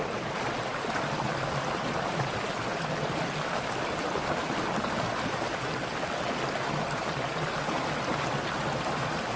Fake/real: real